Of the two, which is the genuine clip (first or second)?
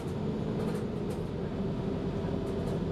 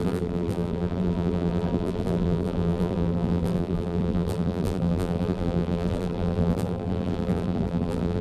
first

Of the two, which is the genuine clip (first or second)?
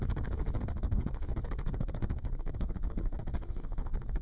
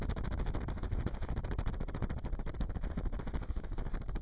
second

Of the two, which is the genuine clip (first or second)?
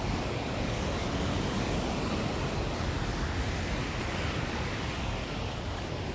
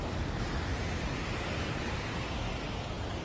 second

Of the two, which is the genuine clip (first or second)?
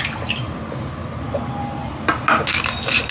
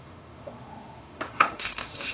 first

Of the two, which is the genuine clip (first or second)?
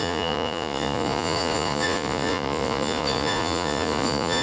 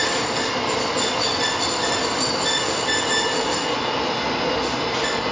second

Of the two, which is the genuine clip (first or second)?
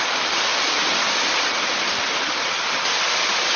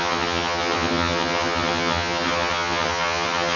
first